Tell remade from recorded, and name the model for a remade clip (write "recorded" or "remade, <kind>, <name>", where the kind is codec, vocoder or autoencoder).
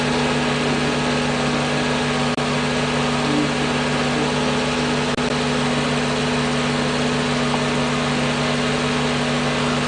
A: recorded